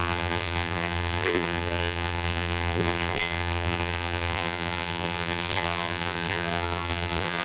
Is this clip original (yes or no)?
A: no